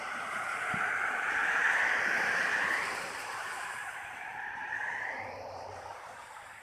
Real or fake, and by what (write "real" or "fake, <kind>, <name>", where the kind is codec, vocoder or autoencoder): fake, vocoder, BigVGAN v2